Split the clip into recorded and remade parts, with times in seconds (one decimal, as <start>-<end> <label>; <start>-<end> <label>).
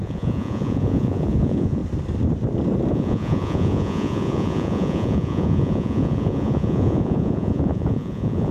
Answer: 0.0-1.8 remade; 1.8-2.9 recorded; 2.9-8.5 remade